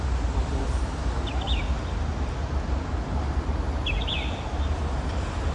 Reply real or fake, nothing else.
real